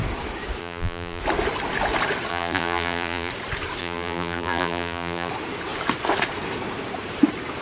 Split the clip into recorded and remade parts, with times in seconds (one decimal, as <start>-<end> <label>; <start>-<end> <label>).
0.0-0.6 recorded; 0.6-1.2 remade; 1.2-2.3 recorded; 2.3-3.3 remade; 3.3-3.8 recorded; 3.8-5.3 remade; 5.3-7.6 recorded